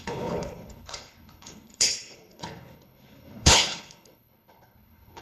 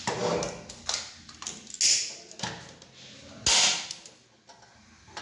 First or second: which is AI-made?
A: first